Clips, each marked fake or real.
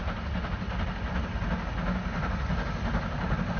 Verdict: real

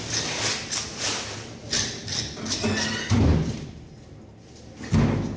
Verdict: real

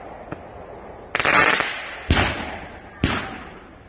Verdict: real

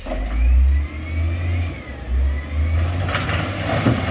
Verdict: real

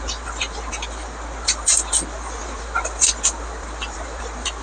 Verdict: real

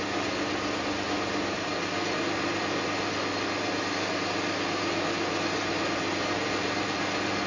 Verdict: real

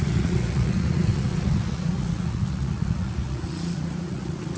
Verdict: fake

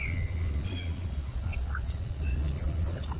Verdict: fake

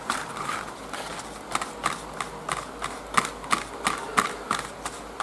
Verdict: real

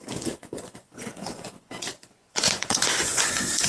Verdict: fake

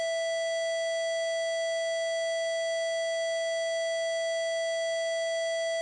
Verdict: real